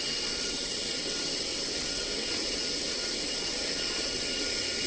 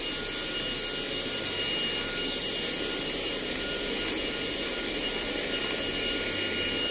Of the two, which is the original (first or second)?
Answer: second